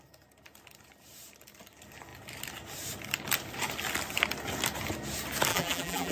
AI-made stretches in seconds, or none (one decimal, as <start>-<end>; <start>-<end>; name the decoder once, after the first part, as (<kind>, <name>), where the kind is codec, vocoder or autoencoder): 5.5-6.1 (vocoder, BigVGAN v2)

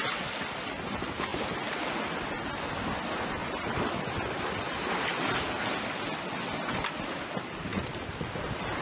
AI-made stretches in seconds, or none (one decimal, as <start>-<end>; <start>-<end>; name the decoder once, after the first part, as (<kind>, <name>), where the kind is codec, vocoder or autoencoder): 1.3-2.1 (vocoder, BigVGAN v2); 3.4-5.4; 7.7-8.4

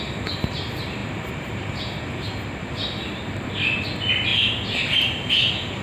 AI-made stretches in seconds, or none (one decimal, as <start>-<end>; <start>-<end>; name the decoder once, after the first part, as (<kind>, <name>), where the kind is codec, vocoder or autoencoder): 1.0-3.5 (vocoder, BigVGAN v2); 4.3-5.3

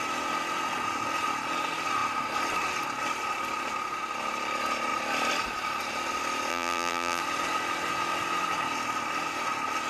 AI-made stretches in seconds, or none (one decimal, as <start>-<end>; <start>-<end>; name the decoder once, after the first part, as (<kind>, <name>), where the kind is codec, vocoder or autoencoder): 6.5-7.2 (vocoder, BigVGAN v2)

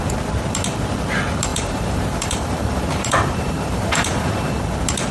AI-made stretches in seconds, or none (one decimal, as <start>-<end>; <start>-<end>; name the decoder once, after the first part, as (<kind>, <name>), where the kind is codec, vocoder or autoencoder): 1.5-4.6 (vocoder, BigVGAN v2)

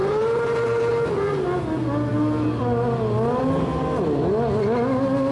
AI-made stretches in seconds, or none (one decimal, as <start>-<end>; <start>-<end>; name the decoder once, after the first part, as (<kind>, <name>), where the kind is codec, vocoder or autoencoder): 0.0-1.1 (vocoder, BigVGAN v2)

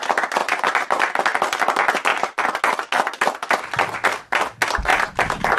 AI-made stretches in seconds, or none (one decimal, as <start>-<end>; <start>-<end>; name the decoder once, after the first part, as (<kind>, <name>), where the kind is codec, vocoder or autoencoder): 0.4-1.2 (vocoder, BigVGAN v2); 2.1-2.6; 4.9-5.6

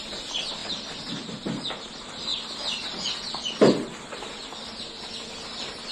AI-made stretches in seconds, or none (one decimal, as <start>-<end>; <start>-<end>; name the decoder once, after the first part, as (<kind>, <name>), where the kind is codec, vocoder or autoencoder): 2.3-4.2 (vocoder, BigVGAN v2)